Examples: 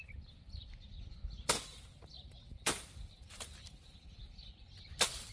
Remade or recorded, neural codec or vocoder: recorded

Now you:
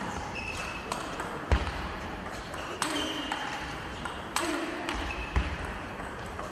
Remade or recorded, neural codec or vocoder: remade, vocoder, BigVGAN v2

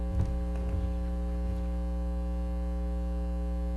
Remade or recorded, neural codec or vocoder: recorded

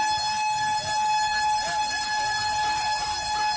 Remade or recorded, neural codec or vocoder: recorded